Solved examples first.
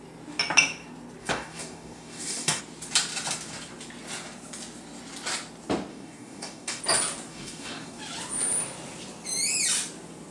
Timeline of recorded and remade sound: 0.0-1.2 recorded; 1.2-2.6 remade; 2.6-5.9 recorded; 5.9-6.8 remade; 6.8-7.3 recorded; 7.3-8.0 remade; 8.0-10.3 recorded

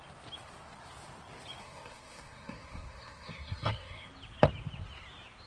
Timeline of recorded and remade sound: 0.0-1.6 recorded; 1.6-4.1 remade; 4.1-5.5 recorded

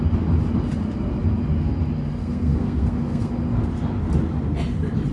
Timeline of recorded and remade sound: 0.0-2.2 recorded; 2.2-3.3 remade; 3.3-5.1 recorded

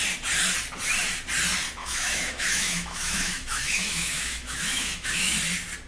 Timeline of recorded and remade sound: 0.0-1.8 recorded; 1.8-5.3 remade; 5.3-5.9 recorded

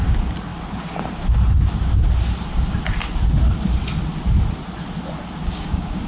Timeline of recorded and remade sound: 0.0-5.4 recorded; 5.4-6.1 remade

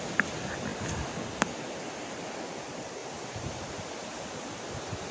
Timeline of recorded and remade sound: 0.0-3.0 recorded; 3.0-3.8 remade; 3.8-5.1 recorded

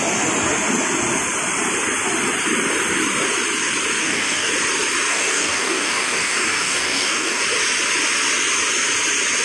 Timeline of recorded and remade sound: 0.0-4.0 recorded; 4.0-4.5 remade; 4.5-5.1 recorded; 5.1-7.4 remade; 7.4-9.4 recorded